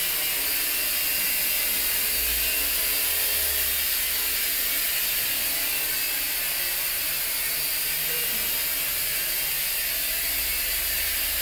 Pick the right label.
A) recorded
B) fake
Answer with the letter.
A